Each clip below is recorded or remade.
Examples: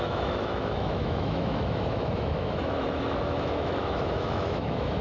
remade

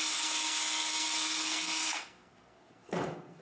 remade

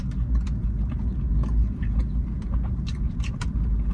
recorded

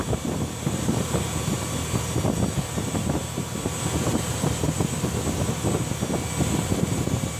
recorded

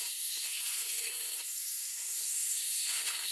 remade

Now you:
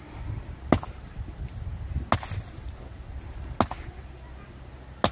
recorded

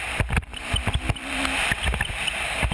remade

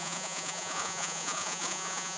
remade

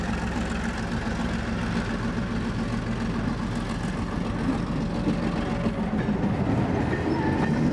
recorded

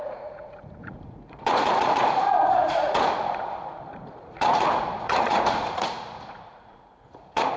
remade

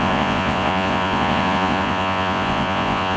remade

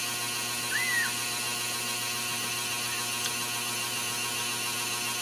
recorded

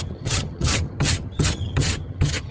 remade